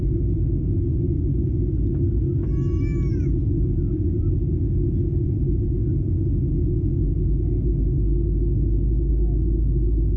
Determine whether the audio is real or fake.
real